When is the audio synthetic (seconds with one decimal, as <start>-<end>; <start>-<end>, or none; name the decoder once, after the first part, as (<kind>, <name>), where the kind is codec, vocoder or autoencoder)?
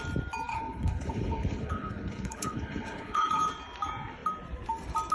0.5-3.4 (codec, HILCodec)